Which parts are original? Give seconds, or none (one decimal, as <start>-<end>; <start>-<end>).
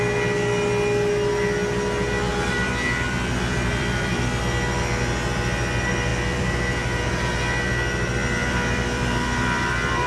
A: 0.0-2.3; 4.4-6.1; 7.3-8.4